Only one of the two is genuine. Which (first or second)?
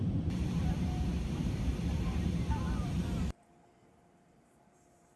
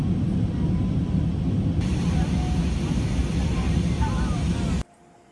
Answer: second